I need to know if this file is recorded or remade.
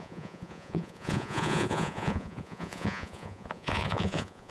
remade